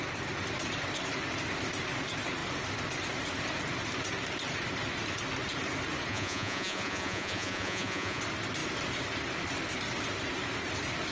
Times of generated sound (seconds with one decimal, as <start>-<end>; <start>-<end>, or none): 6.1-8.2